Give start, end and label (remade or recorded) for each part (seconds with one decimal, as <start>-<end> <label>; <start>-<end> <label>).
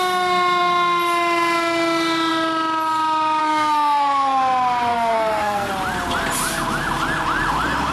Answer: 0.0-3.4 recorded; 3.4-4.4 remade; 4.4-4.9 recorded; 4.9-5.7 remade; 5.7-7.9 recorded